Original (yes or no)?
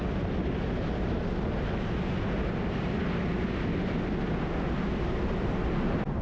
yes